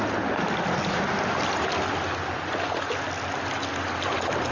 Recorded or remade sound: recorded